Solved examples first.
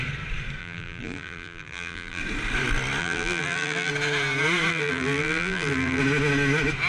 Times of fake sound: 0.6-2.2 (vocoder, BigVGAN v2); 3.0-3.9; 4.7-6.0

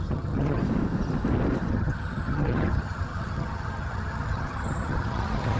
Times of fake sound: 0.0-0.6 (vocoder, HiFi-GAN); 1.7-5.6

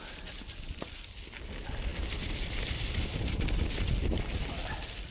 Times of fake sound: none

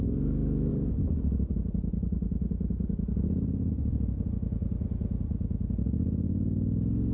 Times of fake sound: 0.7-4.3 (vocoder, BigVGAN v2)

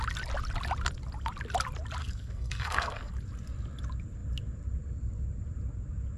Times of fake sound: 2.0-3.1 (codec, SNAC)

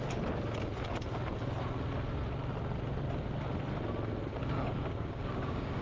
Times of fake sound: 4.3-5.8 (codec, DAC)